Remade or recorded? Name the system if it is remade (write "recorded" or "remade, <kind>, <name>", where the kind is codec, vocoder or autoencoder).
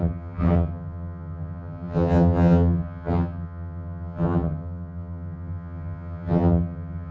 remade, vocoder, HiFi-GAN